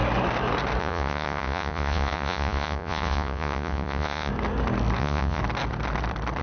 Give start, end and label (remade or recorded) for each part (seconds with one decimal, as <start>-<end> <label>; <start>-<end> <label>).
0.0-0.8 recorded; 0.8-4.3 remade; 4.3-5.0 recorded; 5.0-5.4 remade; 5.4-6.4 recorded